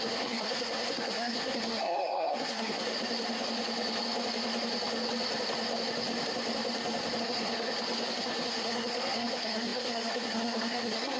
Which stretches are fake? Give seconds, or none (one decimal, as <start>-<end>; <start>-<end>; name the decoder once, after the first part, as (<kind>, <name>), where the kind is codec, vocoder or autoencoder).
0.0-2.9 (codec, SNAC); 7.2-7.7; 8.2-11.2